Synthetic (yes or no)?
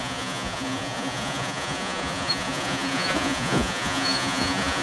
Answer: yes